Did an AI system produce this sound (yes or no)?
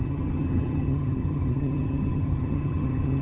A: yes